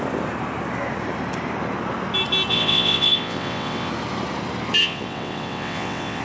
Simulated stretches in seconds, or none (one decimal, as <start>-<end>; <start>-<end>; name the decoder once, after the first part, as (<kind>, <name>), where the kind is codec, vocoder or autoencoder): 2.5-3.9 (vocoder, WaveNeXt); 4.8-6.2